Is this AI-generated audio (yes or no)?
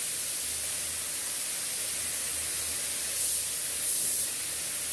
no